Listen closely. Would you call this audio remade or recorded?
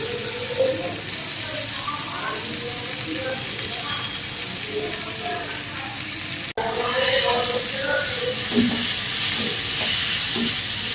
recorded